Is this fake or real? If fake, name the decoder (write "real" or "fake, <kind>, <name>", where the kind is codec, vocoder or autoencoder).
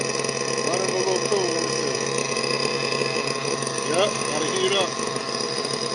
real